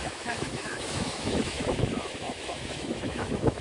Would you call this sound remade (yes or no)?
yes